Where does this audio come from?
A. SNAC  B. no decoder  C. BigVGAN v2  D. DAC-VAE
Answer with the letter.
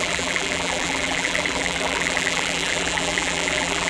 C